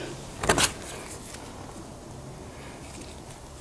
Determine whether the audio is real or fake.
real